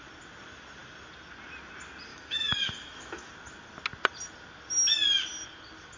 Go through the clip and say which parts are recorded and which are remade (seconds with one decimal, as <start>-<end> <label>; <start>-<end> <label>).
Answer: 0.0-2.1 recorded; 2.1-3.3 remade; 3.3-6.0 recorded